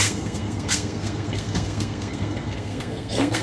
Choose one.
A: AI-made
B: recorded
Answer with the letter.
A